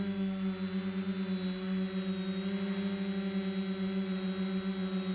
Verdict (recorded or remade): recorded